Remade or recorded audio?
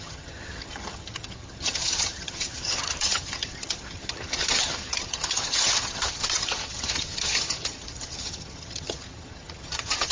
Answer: remade